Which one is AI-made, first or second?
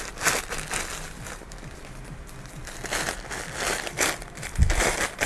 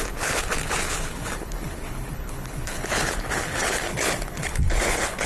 second